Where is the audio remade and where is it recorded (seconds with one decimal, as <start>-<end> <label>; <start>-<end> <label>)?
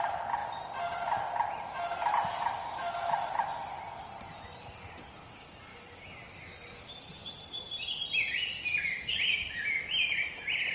0.0-2.6 recorded; 2.6-3.2 remade; 3.2-10.7 recorded